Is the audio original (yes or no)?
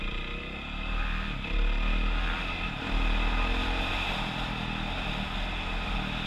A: yes